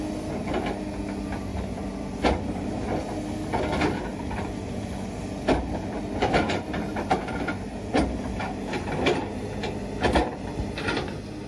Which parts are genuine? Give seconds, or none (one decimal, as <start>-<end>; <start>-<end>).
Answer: 0.0-1.5; 2.7-4.1; 8.0-11.5